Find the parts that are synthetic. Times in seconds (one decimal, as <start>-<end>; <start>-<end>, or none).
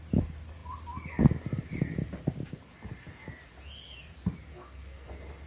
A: 4.5-5.1